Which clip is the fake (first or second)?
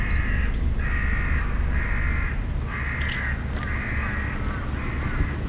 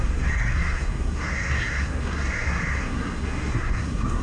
second